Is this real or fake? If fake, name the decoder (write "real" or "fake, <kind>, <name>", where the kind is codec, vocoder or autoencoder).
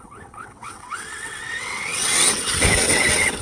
fake, vocoder, WaveNeXt